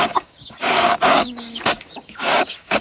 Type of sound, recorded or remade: remade